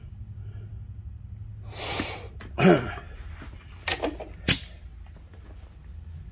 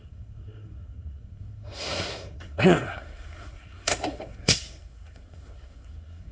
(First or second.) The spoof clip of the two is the second